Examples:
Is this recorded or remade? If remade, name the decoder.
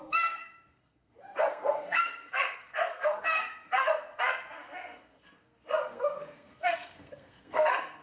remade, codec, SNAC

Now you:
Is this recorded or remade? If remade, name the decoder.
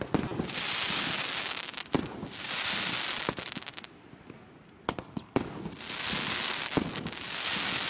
recorded